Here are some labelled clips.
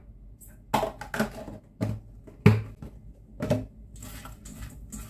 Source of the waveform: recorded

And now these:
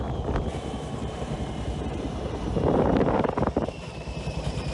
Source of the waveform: remade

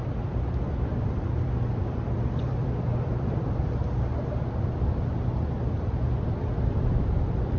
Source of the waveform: remade